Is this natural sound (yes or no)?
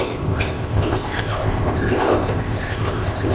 no